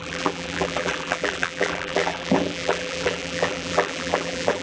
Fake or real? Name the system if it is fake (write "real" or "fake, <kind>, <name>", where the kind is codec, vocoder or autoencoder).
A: fake, vocoder, BigVGAN v2